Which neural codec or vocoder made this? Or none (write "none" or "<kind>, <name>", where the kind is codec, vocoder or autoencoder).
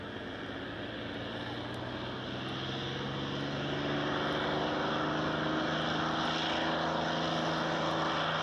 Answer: none